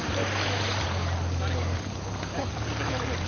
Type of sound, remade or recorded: recorded